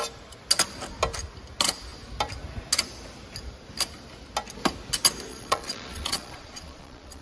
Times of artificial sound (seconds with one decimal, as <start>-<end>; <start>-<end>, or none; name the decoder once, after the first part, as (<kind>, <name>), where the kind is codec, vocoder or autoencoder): 5.3-7.2 (vocoder, Vocos)